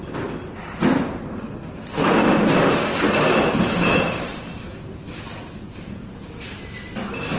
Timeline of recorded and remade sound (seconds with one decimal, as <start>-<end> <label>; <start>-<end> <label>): 0.0-2.9 recorded; 2.9-4.3 remade; 4.3-5.3 recorded; 5.3-6.3 remade; 6.3-7.4 recorded

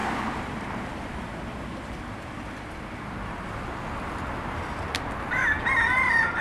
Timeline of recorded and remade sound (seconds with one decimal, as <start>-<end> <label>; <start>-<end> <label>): 0.0-3.8 remade; 3.8-6.4 recorded

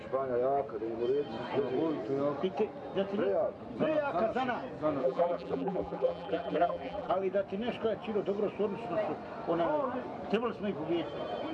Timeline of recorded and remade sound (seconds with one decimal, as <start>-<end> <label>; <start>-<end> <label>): 0.0-5.0 recorded; 5.0-7.1 remade; 7.1-11.5 recorded

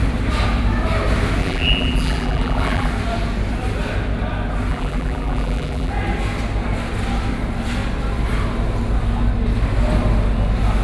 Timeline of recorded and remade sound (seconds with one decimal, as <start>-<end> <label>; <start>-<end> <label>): 0.0-1.4 recorded; 1.4-2.9 remade; 2.9-4.7 recorded; 4.7-5.9 remade; 5.9-10.8 recorded

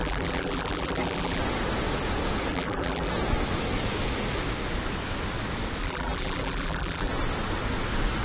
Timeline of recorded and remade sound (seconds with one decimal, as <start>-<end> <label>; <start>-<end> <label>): 0.0-1.4 remade; 1.4-2.5 recorded; 2.5-3.1 remade; 3.1-5.8 recorded; 5.8-7.1 remade; 7.1-8.2 recorded

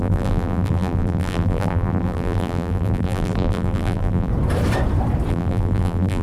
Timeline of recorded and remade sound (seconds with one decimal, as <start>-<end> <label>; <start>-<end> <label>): 0.0-4.3 remade; 4.3-5.3 recorded; 5.3-6.2 remade

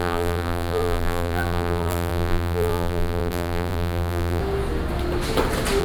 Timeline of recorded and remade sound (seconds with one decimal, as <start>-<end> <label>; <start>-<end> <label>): 0.0-4.4 remade; 4.4-5.8 recorded

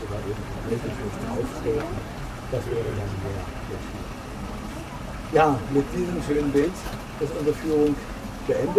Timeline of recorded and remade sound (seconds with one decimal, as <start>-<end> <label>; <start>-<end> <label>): 0.0-0.5 recorded; 0.5-3.6 remade; 3.6-5.6 recorded; 5.6-7.0 remade; 7.0-8.8 recorded